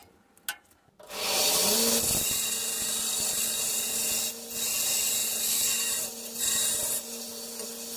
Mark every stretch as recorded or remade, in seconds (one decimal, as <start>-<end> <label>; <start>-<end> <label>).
0.0-8.0 recorded